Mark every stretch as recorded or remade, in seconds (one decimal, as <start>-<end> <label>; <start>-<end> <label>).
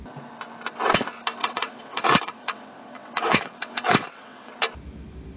0.0-1.4 recorded; 1.4-4.6 remade; 4.6-5.4 recorded